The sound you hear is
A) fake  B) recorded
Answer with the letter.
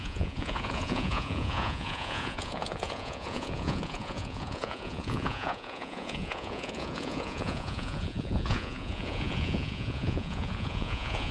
A